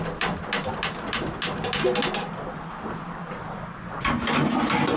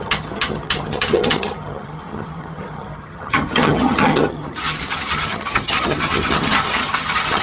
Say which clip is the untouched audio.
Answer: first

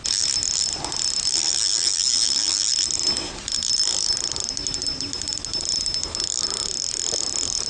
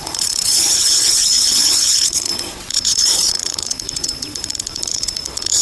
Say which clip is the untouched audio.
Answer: first